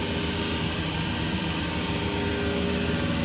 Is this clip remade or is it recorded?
recorded